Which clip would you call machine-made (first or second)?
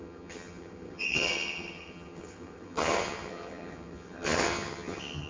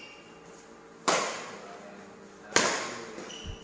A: first